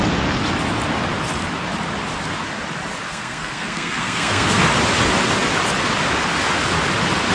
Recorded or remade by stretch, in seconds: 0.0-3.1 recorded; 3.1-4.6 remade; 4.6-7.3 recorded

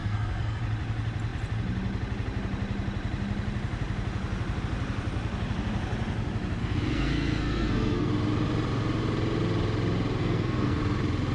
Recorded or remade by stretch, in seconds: 0.0-0.6 remade; 0.6-6.6 recorded; 6.6-8.1 remade; 8.1-10.2 recorded; 10.2-10.8 remade; 10.8-11.3 recorded

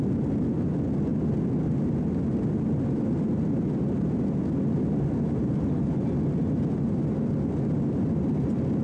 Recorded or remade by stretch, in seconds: 0.0-8.8 recorded

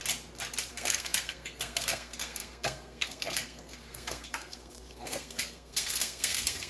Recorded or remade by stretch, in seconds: 0.0-0.7 recorded; 0.7-6.7 remade

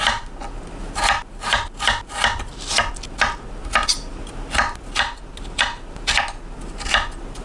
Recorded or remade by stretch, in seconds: 0.0-7.4 recorded